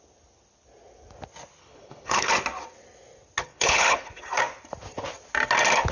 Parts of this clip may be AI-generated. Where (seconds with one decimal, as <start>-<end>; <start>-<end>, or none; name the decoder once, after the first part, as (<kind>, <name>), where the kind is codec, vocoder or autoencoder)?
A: 1.6-2.3 (codec, HILCodec); 3.4-4.1